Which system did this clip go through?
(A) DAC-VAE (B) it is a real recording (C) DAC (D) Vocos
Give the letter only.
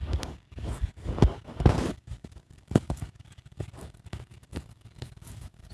C